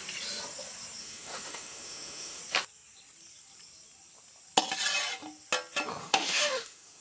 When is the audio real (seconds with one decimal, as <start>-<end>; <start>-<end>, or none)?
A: 0.0-1.0; 2.4-6.0